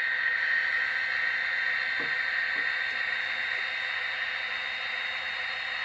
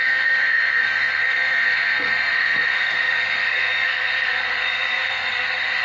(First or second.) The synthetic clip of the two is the second